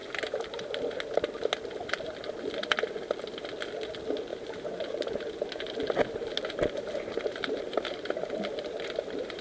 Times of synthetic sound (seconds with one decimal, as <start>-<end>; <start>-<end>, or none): 0.0-1.0; 4.3-9.4